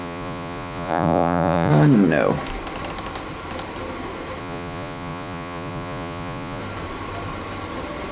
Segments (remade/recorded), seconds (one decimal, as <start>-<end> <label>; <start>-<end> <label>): 0.0-1.7 remade; 1.7-4.4 recorded; 4.4-6.6 remade; 6.6-8.1 recorded